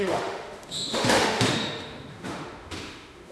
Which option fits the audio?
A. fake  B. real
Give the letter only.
A